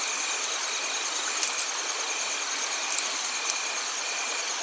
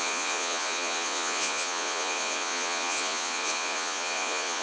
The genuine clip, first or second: first